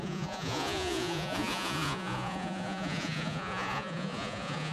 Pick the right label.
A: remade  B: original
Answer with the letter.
A